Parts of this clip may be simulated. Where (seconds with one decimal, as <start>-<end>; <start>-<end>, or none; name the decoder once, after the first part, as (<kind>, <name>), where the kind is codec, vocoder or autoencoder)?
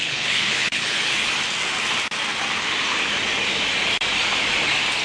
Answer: 0.0-1.3 (codec, HILCodec)